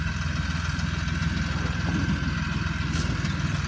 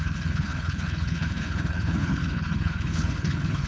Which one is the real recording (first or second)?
first